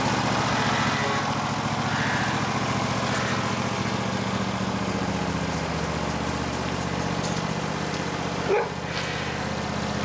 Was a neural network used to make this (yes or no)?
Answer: no